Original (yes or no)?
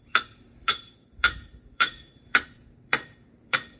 no